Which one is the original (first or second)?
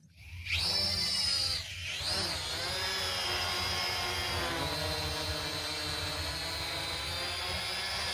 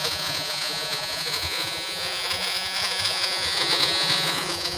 first